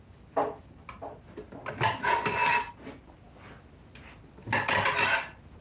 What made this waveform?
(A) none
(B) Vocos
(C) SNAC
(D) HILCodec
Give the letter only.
A